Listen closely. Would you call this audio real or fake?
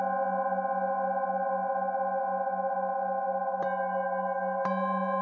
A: real